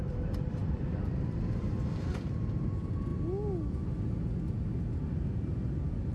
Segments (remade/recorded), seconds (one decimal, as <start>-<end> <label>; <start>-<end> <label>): 0.0-0.6 recorded; 0.6-2.7 remade; 2.7-6.1 recorded